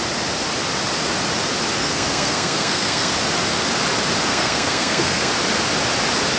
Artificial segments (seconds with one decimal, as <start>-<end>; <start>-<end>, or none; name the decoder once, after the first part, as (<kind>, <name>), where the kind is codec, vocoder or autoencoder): 1.8-3.1 (codec, SNAC); 4.3-5.3